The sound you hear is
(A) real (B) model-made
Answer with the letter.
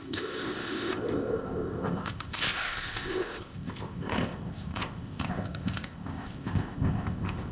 B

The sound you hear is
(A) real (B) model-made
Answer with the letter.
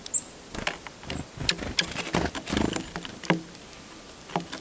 A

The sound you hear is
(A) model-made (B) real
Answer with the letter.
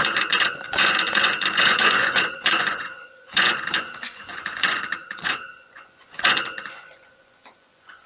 A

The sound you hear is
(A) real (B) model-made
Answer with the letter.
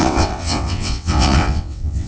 B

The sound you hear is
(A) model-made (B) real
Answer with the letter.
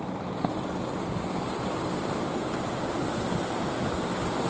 B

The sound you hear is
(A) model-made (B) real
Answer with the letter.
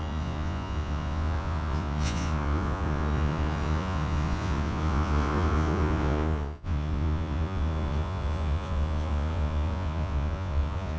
A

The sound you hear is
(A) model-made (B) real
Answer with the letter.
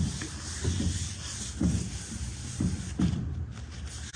B